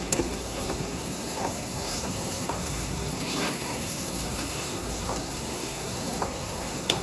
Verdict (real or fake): fake